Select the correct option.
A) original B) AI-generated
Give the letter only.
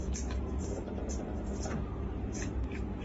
B